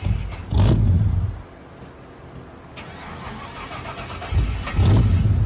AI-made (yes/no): no